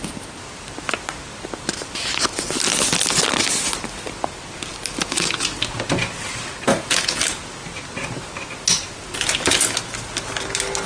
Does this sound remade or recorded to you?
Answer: recorded